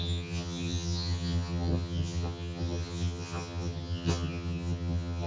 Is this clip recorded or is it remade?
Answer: remade